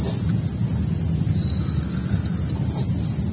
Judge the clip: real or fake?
real